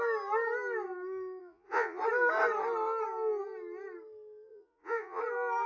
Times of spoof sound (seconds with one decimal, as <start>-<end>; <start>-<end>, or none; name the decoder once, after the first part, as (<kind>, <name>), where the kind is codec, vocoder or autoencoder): 1.4-2.0 (vocoder, Vocos); 4.5-5.2